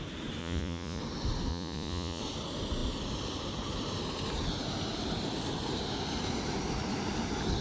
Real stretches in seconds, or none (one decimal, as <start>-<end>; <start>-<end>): 0.0-0.4; 1.0-1.5; 2.2-7.6